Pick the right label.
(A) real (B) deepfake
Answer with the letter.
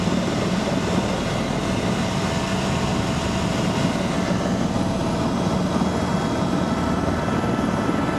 A